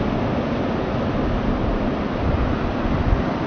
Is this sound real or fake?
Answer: real